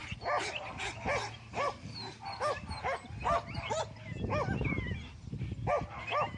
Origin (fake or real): real